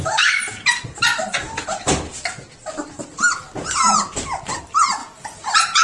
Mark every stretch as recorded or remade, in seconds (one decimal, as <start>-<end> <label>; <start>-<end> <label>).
0.0-5.0 recorded; 5.0-5.8 remade

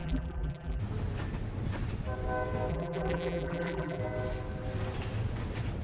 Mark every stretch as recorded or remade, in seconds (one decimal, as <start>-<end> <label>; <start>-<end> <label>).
0.0-0.8 remade; 0.8-2.7 recorded; 2.7-4.0 remade; 4.0-5.8 recorded

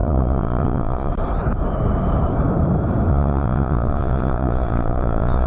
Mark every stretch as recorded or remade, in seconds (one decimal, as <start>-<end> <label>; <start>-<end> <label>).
0.0-1.1 remade; 1.1-3.1 recorded; 3.1-5.5 remade

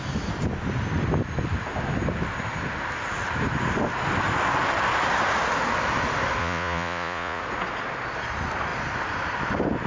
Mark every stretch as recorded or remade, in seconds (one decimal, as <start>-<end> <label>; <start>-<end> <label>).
0.0-6.4 recorded; 6.4-7.4 remade; 7.4-9.9 recorded

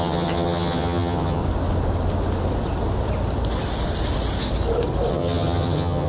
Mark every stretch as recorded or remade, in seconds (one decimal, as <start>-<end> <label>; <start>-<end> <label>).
0.0-1.4 remade; 1.4-5.1 recorded; 5.1-6.1 remade

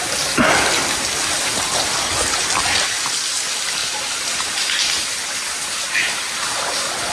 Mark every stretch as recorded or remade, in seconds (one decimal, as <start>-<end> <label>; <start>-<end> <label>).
0.0-3.8 recorded; 3.8-7.1 remade